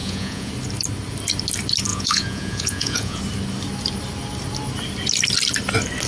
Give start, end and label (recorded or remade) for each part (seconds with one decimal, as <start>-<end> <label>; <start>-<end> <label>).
0.0-0.5 remade; 0.5-1.9 recorded; 1.9-3.2 remade; 3.2-6.1 recorded